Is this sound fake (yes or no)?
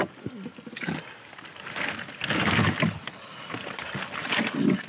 no